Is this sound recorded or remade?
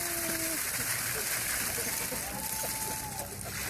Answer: recorded